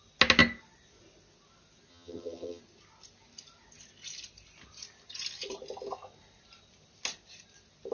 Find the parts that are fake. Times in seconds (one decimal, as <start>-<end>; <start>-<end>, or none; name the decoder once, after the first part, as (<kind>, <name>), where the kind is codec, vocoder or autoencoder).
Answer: 1.9-2.6 (vocoder, HiFi-GAN)